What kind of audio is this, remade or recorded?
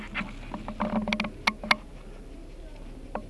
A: recorded